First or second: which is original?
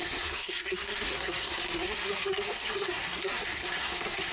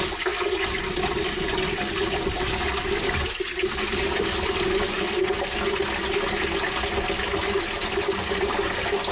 second